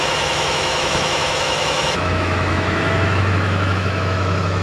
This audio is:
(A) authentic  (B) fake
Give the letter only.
B